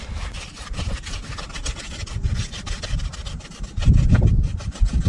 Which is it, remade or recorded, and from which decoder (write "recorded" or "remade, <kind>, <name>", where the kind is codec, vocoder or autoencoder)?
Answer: recorded